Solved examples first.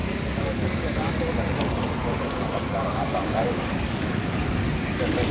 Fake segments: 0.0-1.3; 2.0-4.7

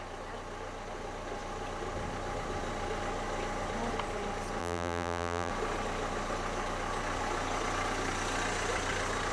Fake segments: 4.6-5.5

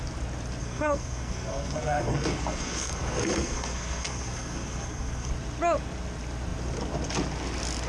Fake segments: 0.6-5.3

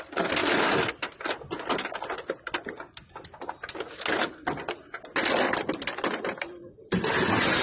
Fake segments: none

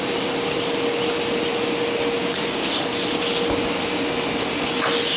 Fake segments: none

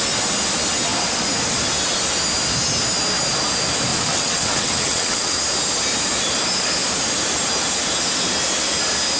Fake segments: 3.9-5.4